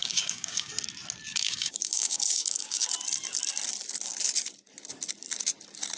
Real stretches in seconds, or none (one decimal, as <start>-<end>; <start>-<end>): 0.7-1.3; 2.9-6.0